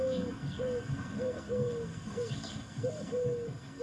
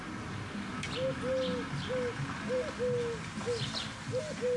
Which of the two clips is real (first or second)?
second